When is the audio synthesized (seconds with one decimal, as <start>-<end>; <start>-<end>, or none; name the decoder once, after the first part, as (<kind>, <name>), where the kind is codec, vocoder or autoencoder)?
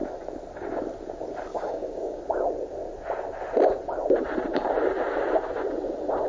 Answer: 1.5-2.2 (codec, DAC)